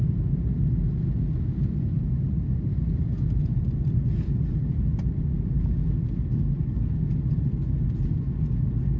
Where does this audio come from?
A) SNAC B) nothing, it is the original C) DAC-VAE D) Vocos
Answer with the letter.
B